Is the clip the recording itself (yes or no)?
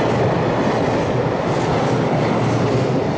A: yes